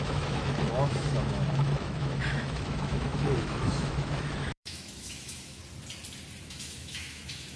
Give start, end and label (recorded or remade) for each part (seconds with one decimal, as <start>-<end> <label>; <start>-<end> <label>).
0.0-5.6 remade; 5.6-6.4 recorded; 6.4-7.6 remade